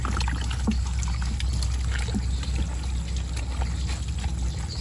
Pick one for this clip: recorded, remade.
recorded